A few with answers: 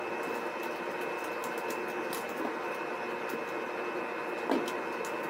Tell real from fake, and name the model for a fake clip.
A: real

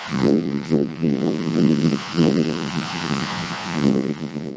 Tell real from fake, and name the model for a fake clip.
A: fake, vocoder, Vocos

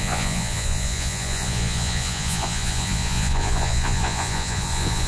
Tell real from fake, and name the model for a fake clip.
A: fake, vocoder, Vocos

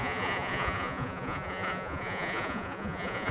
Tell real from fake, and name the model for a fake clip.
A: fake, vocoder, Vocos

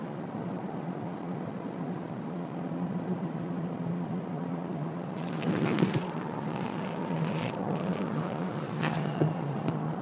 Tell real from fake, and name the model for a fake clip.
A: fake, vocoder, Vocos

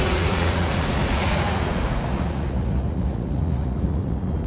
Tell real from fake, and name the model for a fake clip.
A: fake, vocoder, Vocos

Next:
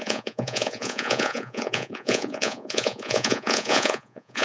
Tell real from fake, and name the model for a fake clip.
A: fake, vocoder, Vocos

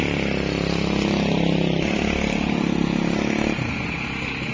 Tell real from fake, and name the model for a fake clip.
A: real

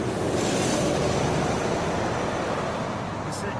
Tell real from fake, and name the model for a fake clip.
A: real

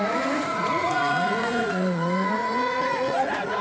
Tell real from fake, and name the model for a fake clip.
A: fake, vocoder, Vocos